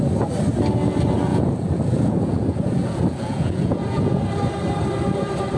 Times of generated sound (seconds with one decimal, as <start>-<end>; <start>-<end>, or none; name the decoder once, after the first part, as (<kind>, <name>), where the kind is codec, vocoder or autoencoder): 1.3-4.2 (vocoder, Vocos)